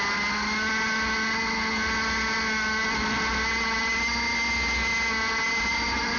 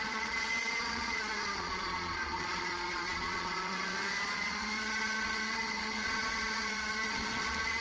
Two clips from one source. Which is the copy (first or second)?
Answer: second